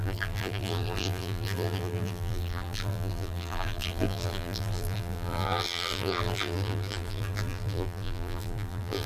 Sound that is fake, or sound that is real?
fake